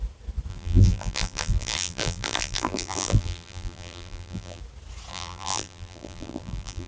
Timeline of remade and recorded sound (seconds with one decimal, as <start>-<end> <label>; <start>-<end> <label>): 0.0-0.5 recorded; 0.5-4.6 remade; 4.6-5.1 recorded; 5.1-6.9 remade

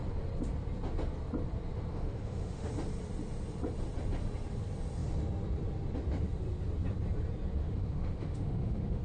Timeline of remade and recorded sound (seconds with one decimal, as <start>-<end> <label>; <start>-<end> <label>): 0.0-1.9 recorded; 1.9-2.7 remade; 2.7-7.6 recorded; 7.6-9.0 remade

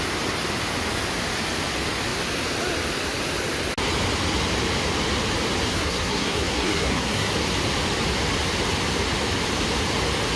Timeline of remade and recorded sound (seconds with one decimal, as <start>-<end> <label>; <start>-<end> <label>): 0.0-5.7 recorded; 5.7-7.3 remade; 7.3-10.4 recorded

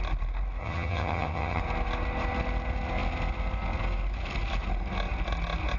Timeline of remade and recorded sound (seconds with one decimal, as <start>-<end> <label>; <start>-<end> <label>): 0.0-0.6 recorded; 0.6-1.6 remade; 1.6-5.8 recorded

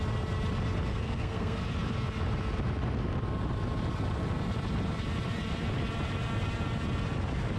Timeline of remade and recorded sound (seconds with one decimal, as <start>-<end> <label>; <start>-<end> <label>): 0.0-0.9 recorded; 0.9-1.6 remade; 1.6-7.6 recorded